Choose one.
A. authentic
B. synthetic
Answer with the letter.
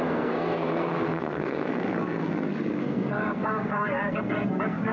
B